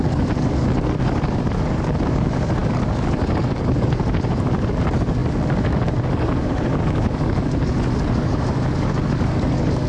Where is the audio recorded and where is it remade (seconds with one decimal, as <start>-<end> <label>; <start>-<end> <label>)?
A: 0.0-9.9 remade